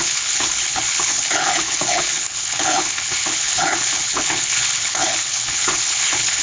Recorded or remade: remade